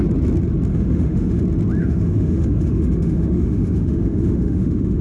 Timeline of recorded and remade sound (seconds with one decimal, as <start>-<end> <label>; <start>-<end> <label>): 0.0-0.7 recorded; 0.7-1.4 remade; 1.4-1.8 recorded; 1.8-5.0 remade